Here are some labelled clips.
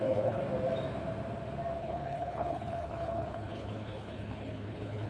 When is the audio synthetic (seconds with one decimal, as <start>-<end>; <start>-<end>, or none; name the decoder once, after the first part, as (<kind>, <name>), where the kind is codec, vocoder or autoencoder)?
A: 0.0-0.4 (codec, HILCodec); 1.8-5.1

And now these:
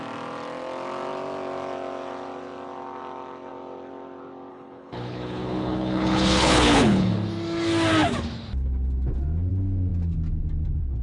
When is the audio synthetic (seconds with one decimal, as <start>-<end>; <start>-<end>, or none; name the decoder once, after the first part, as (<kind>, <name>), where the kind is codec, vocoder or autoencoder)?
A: 4.5-7.1 (codec, HILCodec)

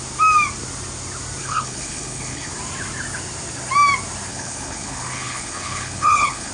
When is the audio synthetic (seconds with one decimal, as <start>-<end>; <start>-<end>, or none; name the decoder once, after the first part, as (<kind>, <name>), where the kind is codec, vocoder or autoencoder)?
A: 1.4-2.5 (codec, HILCodec); 4.3-6.5